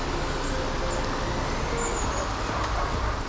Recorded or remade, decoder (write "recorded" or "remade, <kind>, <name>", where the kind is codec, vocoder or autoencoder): recorded